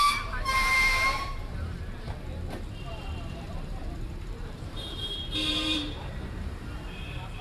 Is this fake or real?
fake